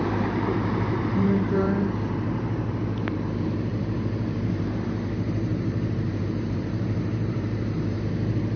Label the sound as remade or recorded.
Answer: remade